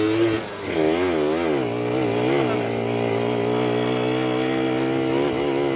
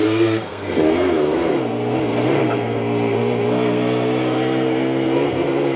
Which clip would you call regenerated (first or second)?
second